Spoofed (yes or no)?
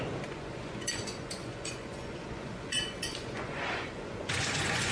yes